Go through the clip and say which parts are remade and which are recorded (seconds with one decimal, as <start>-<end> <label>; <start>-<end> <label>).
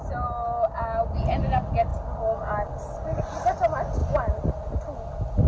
0.0-5.5 recorded